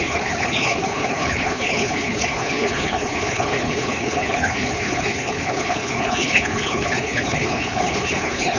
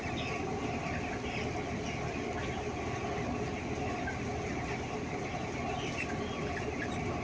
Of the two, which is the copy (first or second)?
first